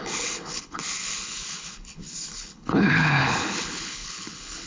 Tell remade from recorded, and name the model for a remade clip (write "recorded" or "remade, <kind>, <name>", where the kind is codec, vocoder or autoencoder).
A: remade, codec, HILCodec